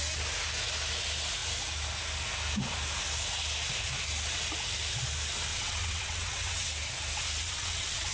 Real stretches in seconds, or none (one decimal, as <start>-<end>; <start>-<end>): 0.0-5.5; 6.7-7.4